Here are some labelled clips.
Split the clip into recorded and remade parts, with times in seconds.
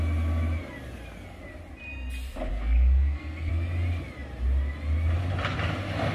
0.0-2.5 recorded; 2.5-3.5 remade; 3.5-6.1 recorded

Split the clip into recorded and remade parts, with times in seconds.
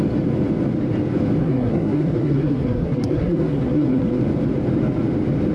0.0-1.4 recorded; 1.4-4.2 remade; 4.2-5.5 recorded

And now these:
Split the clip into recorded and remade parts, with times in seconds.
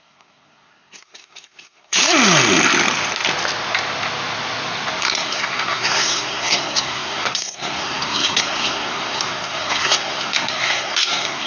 0.0-2.0 remade; 2.0-5.0 recorded; 5.0-11.5 remade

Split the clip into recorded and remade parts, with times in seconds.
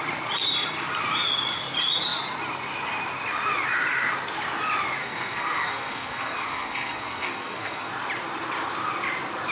0.0-5.0 recorded; 5.0-7.9 remade; 7.9-9.5 recorded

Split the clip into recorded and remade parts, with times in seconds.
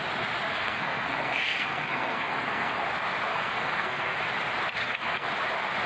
0.0-0.5 recorded; 0.5-2.8 remade; 2.8-3.3 recorded; 3.3-4.2 remade; 4.2-4.8 recorded; 4.8-5.3 remade; 5.3-5.9 recorded